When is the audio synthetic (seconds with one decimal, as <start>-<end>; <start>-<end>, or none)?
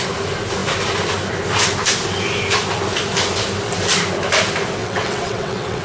4.8-5.8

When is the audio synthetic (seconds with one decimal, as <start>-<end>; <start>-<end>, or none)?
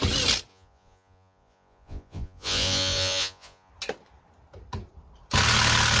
0.5-3.7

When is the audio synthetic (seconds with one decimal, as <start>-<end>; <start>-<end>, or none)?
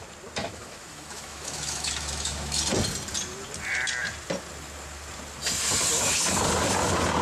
0.4-2.6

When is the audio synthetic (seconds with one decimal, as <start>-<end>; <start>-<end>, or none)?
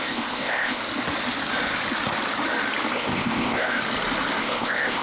0.0-0.8; 2.9-3.8; 4.4-5.0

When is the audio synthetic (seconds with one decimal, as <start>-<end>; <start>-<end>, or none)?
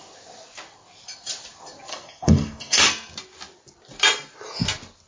1.9-2.8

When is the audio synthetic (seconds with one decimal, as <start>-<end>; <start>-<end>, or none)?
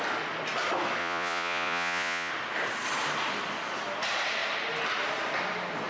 1.0-2.3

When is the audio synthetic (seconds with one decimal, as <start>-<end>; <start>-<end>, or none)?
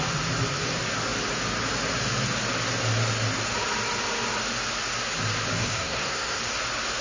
5.6-6.4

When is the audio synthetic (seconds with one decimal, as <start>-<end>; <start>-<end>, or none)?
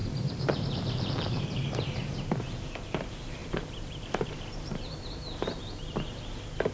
0.0-2.1; 3.4-5.6